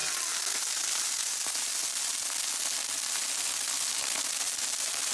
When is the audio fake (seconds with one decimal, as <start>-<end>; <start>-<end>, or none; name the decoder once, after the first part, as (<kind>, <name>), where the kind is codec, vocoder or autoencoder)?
0.6-1.7 (vocoder, BigVGAN v2)